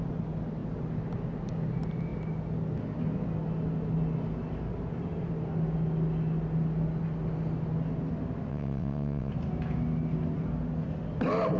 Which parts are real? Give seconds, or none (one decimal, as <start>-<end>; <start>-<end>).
0.0-8.5; 9.3-11.6